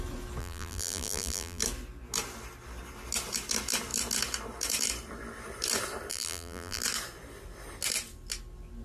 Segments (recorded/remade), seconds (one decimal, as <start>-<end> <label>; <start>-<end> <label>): 0.0-0.4 recorded; 0.4-1.6 remade; 1.6-6.1 recorded; 6.1-6.8 remade; 6.8-8.8 recorded